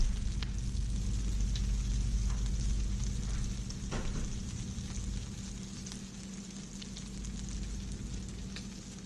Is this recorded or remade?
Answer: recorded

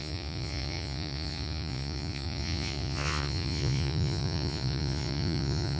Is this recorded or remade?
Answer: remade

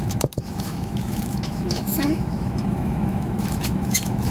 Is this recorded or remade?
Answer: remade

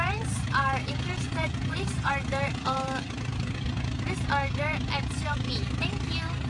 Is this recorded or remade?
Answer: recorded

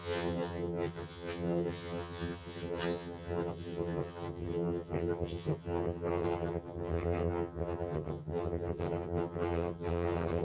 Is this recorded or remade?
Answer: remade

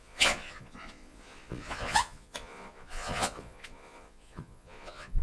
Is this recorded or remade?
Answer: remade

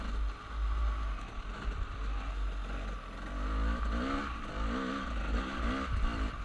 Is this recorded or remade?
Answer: recorded